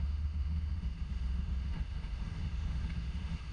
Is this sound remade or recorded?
remade